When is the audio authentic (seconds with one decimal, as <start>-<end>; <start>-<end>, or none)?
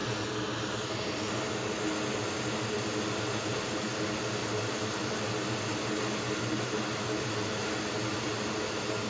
0.0-9.1